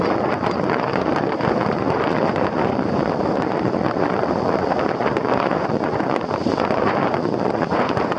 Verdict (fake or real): fake